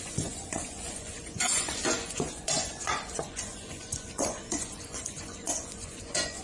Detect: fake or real fake